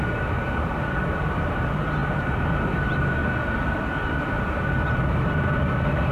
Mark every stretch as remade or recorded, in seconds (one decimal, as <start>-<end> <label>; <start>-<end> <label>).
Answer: 0.0-3.2 remade; 3.2-4.3 recorded; 4.3-6.1 remade